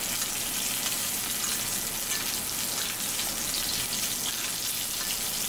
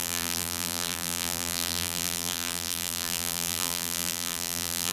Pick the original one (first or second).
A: first